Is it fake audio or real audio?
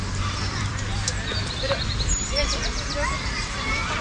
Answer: fake